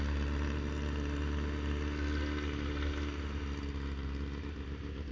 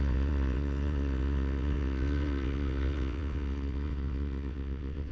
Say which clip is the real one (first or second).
first